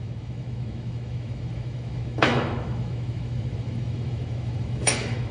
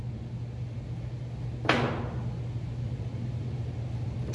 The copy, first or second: first